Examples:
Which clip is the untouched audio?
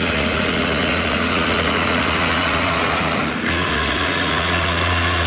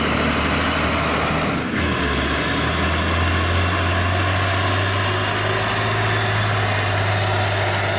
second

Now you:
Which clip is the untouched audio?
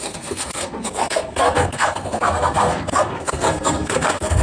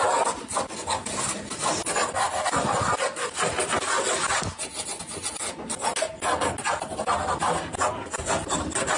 second